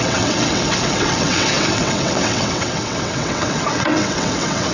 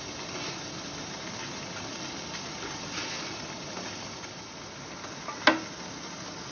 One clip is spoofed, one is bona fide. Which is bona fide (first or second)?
second